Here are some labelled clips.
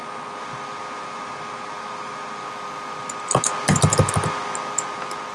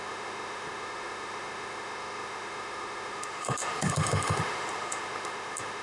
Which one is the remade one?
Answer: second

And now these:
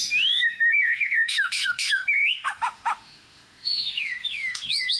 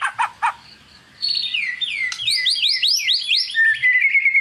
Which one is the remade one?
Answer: first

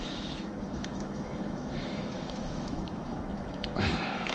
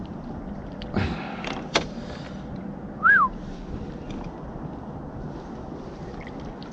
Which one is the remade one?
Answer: first